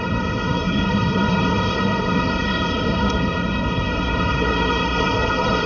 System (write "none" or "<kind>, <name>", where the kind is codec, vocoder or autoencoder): codec, SNAC